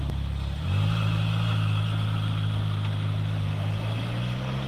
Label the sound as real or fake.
real